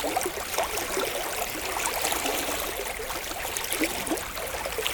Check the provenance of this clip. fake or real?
real